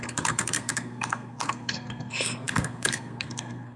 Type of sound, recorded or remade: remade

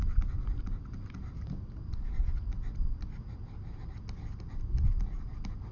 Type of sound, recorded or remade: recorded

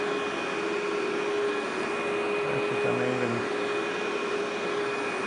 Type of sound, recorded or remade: recorded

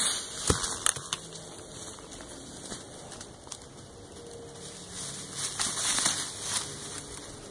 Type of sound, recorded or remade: recorded